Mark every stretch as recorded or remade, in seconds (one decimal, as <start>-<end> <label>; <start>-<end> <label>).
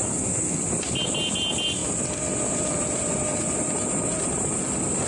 0.0-0.6 remade; 0.6-5.1 recorded